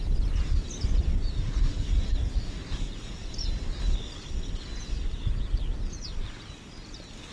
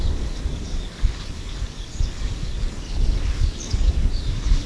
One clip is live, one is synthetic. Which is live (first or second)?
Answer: first